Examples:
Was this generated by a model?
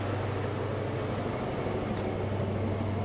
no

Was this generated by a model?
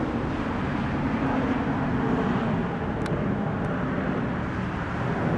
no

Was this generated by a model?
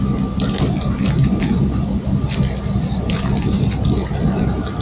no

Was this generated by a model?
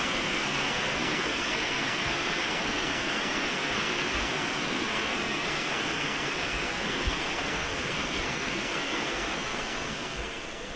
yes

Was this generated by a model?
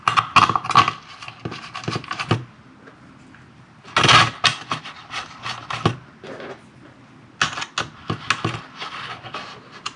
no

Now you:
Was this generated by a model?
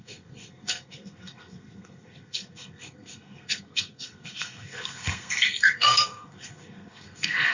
yes